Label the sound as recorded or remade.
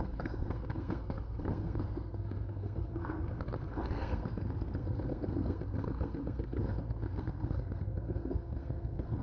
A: remade